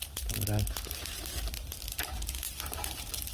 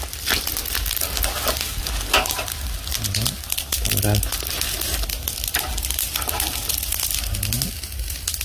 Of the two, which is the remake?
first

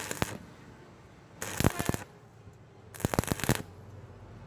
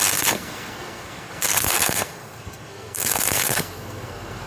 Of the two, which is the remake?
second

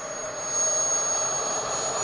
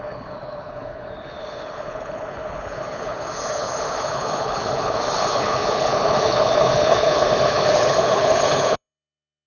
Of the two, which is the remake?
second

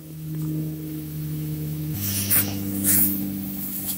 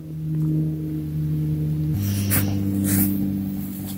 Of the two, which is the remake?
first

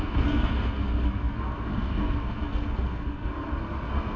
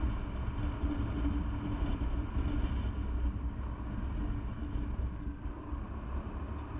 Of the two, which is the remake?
first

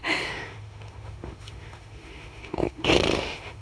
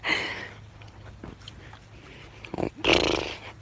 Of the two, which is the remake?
first